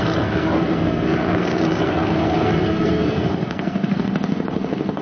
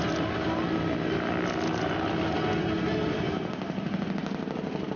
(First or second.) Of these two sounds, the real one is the second